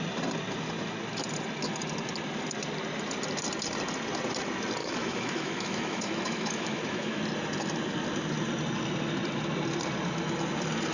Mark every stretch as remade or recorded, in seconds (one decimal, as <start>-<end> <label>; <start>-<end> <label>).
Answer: 0.0-4.8 recorded; 4.8-7.2 remade; 7.2-10.9 recorded